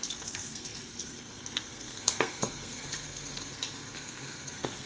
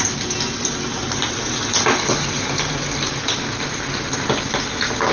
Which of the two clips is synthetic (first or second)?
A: first